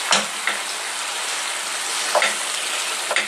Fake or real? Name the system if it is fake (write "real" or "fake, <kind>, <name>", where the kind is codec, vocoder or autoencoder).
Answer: real